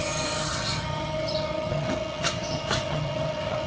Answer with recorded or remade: remade